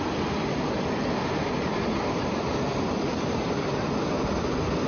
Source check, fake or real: real